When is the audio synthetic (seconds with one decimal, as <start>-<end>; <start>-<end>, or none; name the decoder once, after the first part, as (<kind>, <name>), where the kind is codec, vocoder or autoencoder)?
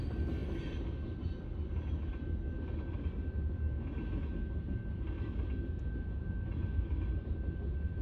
none